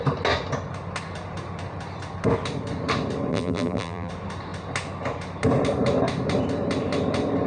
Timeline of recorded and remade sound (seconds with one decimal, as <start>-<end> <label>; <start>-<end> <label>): 0.0-3.3 recorded; 3.3-4.1 remade; 4.1-7.5 recorded